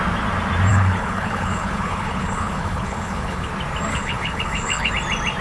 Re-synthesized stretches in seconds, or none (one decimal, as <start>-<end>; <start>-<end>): 0.7-3.5; 3.9-4.9

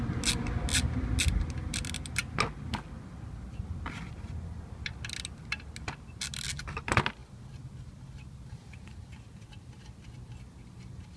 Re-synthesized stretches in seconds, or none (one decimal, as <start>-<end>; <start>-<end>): none

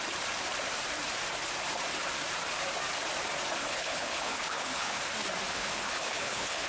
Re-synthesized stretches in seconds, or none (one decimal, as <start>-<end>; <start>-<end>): 3.7-5.0; 5.5-6.7

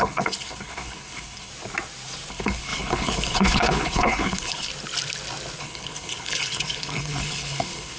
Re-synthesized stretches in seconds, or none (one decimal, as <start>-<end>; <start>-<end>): 0.0-1.5; 2.3-4.7; 5.6-8.0

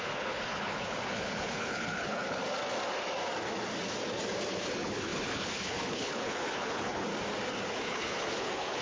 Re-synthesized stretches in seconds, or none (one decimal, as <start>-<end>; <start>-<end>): 0.0-2.4; 4.5-7.1; 7.7-8.8